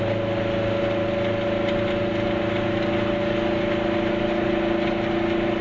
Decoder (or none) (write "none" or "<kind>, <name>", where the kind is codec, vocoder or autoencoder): none